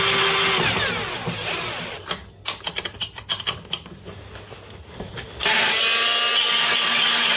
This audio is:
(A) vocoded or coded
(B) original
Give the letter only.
B